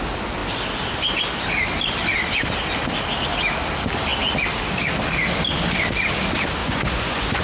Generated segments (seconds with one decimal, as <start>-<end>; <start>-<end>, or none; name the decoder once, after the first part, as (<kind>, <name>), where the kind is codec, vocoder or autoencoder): 6.6-7.4 (vocoder, Vocos)